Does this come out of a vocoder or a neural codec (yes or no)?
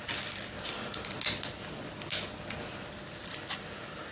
no